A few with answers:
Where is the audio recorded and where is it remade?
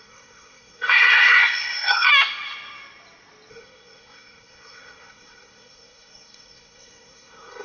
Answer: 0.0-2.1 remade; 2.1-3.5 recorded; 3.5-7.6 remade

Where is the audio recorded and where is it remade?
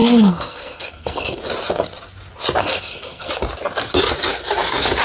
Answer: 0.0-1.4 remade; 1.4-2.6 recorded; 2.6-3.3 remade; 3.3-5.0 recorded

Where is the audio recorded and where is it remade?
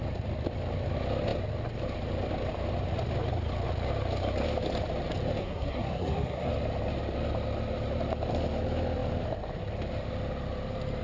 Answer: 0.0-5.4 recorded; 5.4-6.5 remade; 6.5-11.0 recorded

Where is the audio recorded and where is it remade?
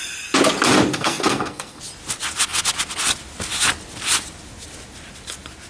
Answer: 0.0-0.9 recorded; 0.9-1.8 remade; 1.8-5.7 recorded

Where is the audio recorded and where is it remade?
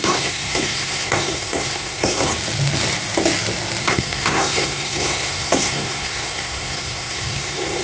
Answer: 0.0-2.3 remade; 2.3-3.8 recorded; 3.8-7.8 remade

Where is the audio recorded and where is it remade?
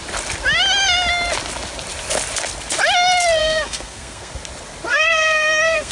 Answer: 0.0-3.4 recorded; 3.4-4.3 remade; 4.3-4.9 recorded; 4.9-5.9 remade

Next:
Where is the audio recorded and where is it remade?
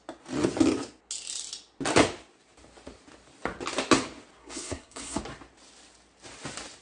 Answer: 0.0-4.4 recorded; 4.4-5.2 remade; 5.2-6.8 recorded